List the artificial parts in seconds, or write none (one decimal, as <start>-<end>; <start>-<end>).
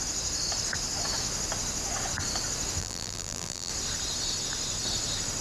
2.8-3.7